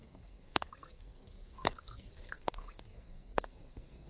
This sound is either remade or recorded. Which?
remade